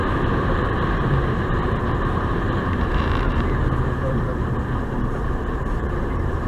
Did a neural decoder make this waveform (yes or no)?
yes